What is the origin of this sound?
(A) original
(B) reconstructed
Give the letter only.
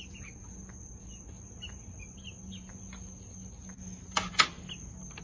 A